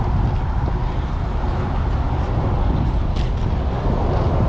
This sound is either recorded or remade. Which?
recorded